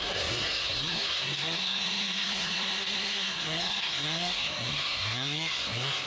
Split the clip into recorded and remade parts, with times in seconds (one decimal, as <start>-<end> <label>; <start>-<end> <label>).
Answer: 0.0-6.1 remade